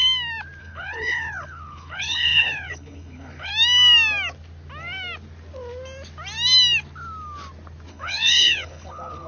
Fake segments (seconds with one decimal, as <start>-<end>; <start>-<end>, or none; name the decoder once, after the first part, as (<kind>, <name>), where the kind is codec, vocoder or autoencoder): 0.6-3.5 (codec, HILCodec); 7.9-9.3